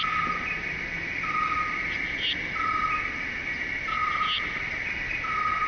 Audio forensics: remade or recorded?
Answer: recorded